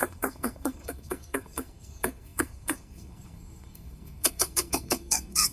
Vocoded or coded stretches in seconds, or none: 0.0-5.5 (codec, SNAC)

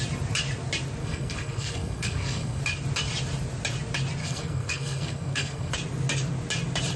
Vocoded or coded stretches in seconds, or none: 1.0-2.6 (codec, SNAC); 4.2-5.7

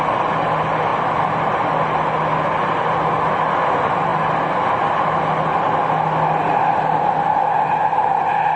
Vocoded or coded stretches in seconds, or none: none

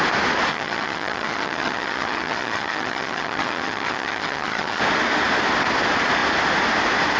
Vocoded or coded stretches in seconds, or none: 0.5-4.8 (vocoder, HiFi-GAN)

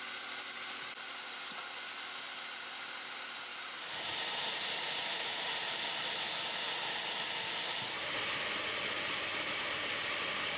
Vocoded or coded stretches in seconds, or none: 3.5-5.8 (vocoder, BigVGAN v2)

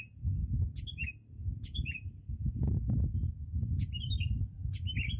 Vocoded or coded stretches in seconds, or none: 0.0-0.4 (vocoder, BigVGAN v2); 1.4-4.6

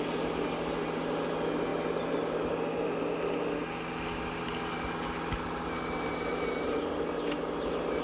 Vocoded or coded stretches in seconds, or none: none

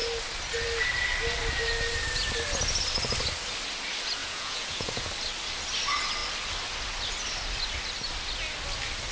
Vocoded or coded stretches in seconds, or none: 4.2-5.1 (vocoder, Vocos)